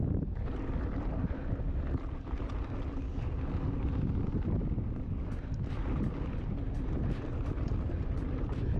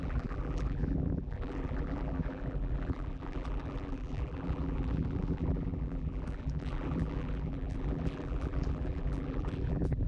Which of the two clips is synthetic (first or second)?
second